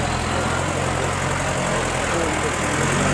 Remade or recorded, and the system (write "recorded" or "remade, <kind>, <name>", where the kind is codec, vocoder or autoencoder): recorded